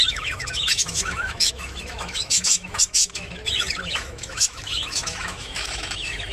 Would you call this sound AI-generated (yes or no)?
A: yes